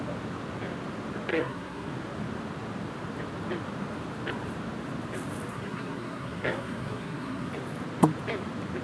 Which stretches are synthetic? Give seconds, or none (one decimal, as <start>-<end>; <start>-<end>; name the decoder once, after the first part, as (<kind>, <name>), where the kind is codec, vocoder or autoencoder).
1.3-1.9 (codec, SNAC); 5.5-7.5